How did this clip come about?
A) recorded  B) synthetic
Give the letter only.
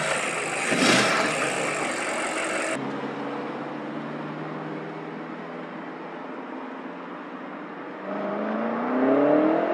A